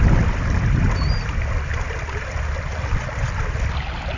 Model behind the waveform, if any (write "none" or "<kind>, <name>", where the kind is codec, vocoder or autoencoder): none